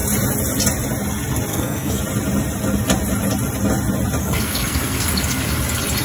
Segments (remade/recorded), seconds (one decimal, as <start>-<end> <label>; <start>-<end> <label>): 0.0-1.5 recorded; 1.5-2.0 remade; 2.0-4.2 recorded; 4.2-5.5 remade; 5.5-6.0 recorded